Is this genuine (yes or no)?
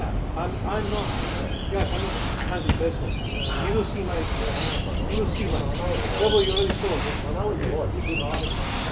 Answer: yes